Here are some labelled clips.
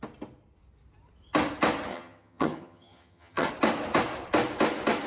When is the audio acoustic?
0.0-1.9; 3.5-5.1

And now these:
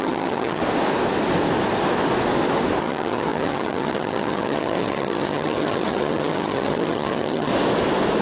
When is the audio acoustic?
0.6-2.8; 7.5-8.2

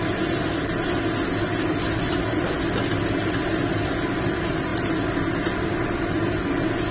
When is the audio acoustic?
0.0-6.9

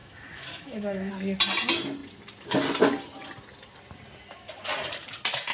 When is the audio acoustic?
1.1-5.5

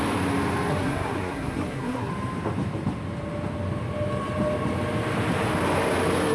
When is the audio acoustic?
0.0-0.7; 2.1-6.3

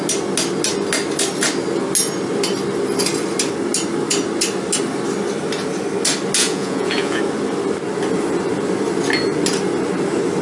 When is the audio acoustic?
0.0-6.4; 7.2-10.4

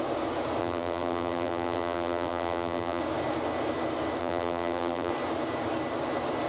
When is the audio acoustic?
0.0-0.6; 3.0-4.2; 5.1-6.5